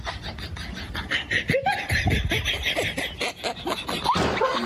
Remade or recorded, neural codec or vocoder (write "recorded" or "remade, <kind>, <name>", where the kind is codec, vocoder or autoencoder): recorded